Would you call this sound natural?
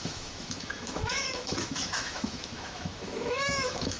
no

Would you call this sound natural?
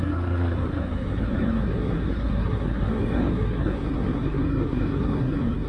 no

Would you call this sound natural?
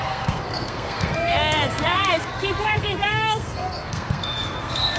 no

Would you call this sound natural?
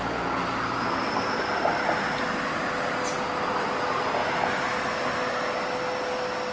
yes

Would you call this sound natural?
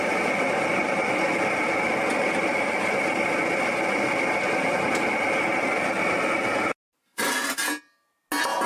yes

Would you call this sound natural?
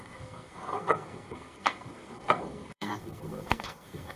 no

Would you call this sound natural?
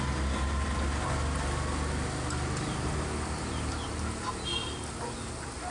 yes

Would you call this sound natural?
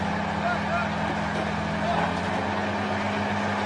yes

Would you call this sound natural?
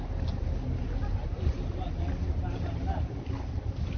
yes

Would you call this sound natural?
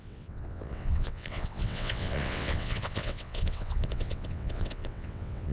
no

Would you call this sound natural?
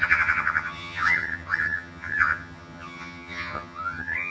no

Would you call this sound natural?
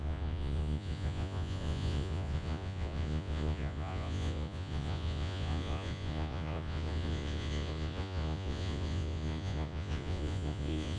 no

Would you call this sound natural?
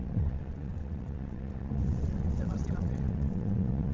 no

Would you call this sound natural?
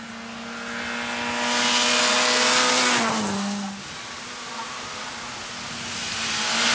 yes